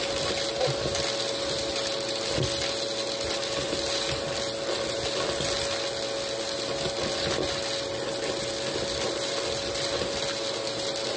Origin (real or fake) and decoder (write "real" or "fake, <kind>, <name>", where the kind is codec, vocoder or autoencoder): real